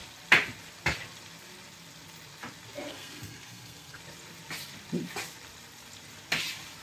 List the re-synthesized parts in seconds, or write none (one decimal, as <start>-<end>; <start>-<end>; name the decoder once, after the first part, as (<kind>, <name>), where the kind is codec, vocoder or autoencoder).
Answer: 2.9-4.0 (codec, SNAC)